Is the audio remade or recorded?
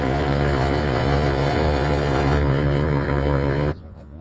remade